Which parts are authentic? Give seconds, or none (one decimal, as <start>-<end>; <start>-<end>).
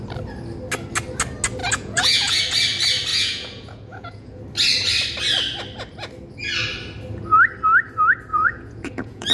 0.0-1.6; 2.4-3.1; 4.4-8.3